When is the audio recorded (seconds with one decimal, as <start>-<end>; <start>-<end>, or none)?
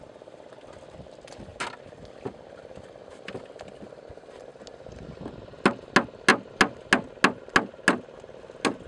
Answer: 0.0-8.9